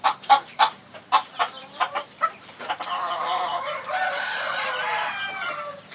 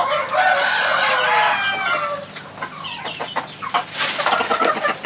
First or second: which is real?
second